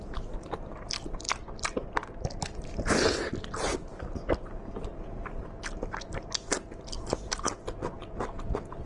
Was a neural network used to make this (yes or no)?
no